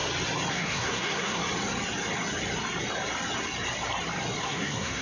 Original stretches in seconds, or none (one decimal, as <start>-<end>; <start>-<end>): 0.0-0.5; 1.4-4.4